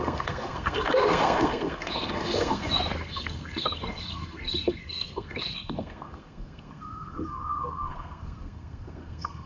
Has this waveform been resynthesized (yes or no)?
yes